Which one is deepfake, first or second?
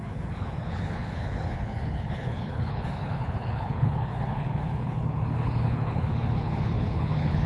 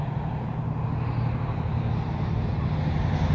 first